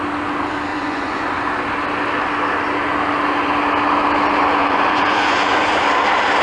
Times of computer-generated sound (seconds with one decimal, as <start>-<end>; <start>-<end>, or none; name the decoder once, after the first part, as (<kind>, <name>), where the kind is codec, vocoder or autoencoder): 0.7-1.3 (vocoder, Vocos); 4.6-5.8